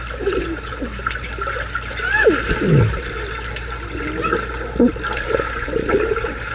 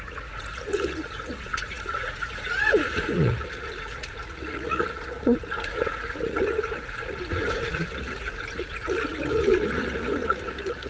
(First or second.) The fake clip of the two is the second